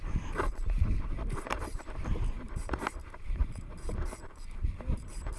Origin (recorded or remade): remade